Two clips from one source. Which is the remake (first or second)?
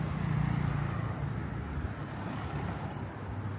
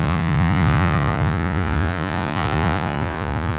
second